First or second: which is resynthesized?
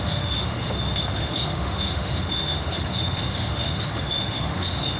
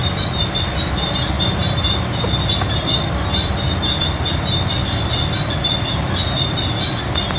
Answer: first